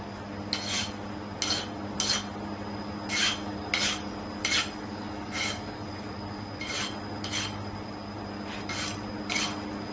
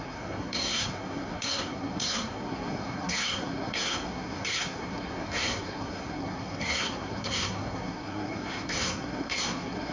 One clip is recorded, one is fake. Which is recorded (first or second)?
first